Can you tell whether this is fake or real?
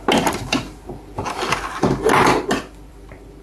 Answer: fake